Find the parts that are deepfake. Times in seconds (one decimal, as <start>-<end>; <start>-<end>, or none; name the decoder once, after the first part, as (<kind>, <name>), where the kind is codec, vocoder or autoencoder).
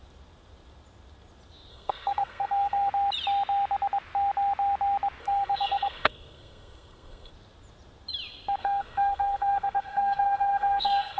1.7-2.9 (codec, SNAC); 5.2-7.3; 8.6-11.2